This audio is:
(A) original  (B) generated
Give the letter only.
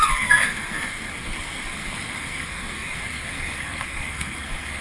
B